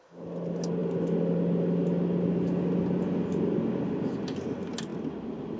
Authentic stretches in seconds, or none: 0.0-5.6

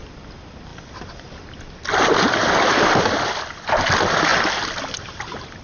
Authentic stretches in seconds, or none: 0.0-5.6

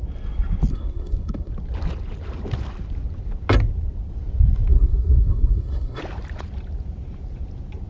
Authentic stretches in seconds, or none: 0.0-0.7; 1.5-4.7; 6.0-7.9

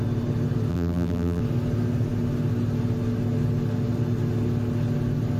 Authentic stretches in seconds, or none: 0.0-0.7; 1.4-5.4

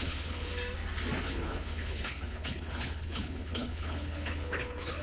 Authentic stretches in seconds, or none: 0.5-1.2

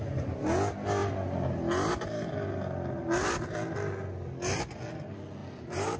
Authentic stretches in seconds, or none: 0.0-5.4

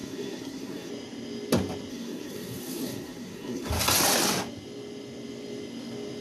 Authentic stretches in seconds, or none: 0.9-1.9; 3.7-6.2

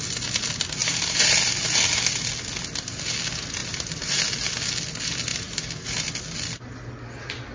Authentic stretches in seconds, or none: 0.0-0.8; 1.3-3.6; 4.2-5.3; 6.1-7.5